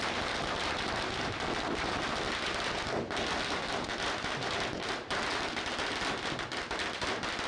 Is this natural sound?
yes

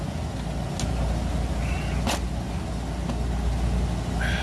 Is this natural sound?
yes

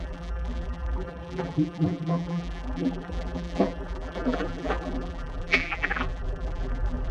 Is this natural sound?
no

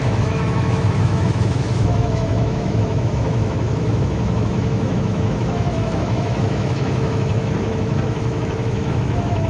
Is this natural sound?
no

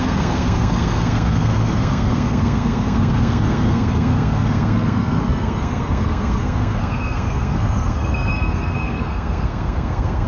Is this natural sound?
no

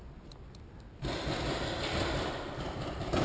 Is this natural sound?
yes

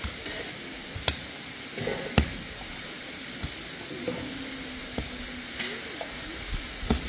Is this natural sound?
yes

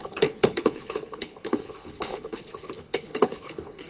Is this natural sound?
no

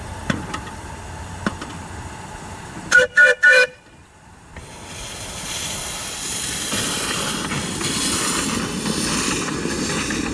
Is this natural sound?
no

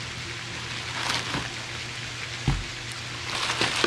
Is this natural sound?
yes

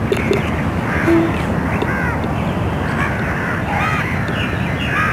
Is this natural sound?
yes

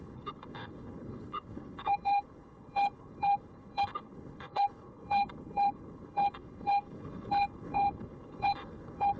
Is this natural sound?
no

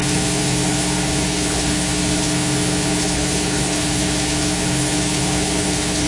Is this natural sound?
no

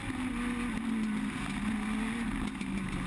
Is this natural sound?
yes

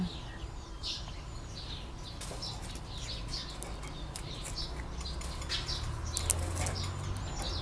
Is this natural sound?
yes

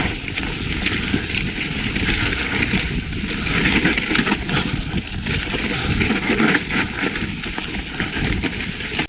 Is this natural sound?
yes